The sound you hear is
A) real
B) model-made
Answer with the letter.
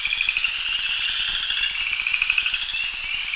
A